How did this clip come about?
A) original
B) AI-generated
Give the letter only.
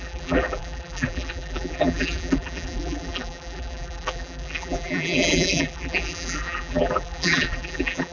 B